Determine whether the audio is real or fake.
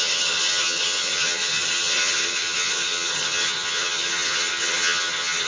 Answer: fake